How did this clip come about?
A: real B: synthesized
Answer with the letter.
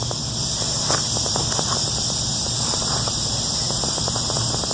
A